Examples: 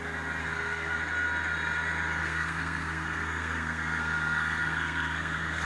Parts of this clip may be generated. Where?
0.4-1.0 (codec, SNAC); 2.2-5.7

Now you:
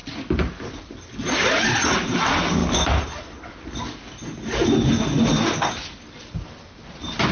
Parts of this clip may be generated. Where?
none

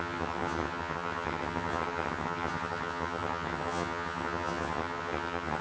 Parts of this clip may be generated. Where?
0.0-5.6 (vocoder, HiFi-GAN)

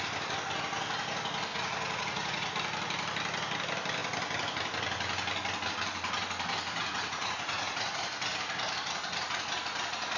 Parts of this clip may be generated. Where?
1.5-2.5 (vocoder, Vocos); 6.8-8.0

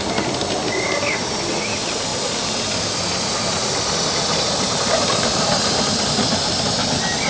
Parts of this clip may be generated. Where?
none